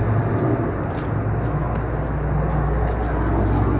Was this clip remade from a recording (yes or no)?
no